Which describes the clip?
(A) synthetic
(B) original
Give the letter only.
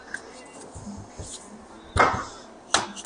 B